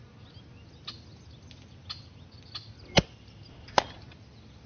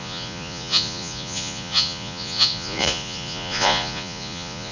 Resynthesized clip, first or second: second